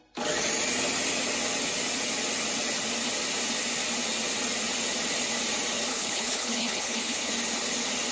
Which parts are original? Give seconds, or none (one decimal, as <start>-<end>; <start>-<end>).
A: 0.0-5.9; 7.3-8.1